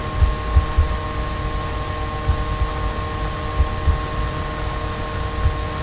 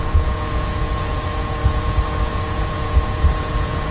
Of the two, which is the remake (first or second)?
second